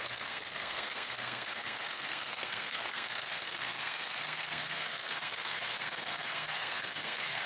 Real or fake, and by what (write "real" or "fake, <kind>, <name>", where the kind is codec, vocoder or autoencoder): fake, codec, SNAC